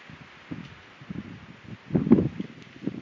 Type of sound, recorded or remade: recorded